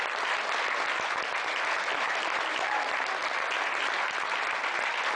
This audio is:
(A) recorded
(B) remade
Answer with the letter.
A